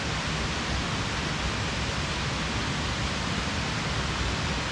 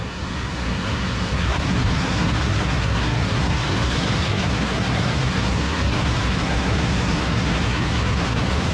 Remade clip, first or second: second